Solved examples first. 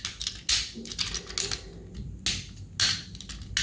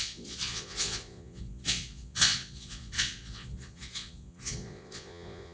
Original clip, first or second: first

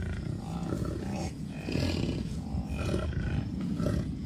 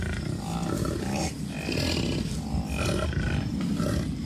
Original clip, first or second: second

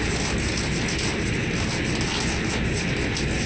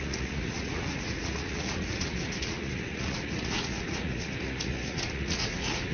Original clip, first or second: first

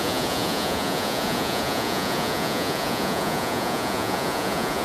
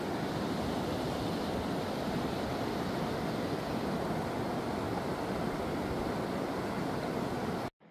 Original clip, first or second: second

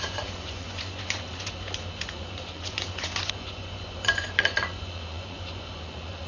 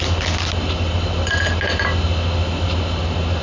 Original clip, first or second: second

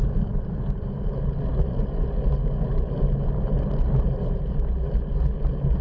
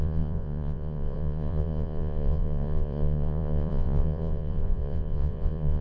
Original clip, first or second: first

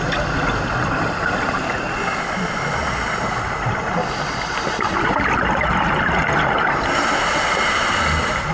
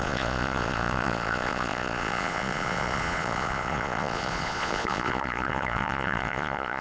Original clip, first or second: first